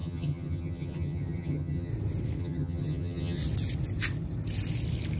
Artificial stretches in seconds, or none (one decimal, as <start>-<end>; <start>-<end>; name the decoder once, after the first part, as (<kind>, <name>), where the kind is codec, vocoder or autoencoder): 0.0-1.9 (vocoder, HiFi-GAN); 2.4-3.4